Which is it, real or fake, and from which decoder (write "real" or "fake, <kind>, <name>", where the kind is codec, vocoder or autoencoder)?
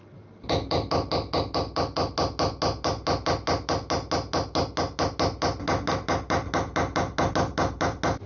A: real